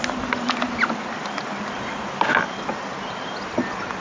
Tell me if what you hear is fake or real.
real